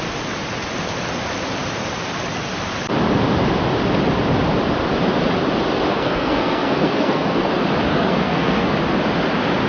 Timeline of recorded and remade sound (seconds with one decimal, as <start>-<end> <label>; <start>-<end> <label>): 0.0-5.9 recorded; 5.9-7.5 remade; 7.5-7.9 recorded; 7.9-8.7 remade; 8.7-9.7 recorded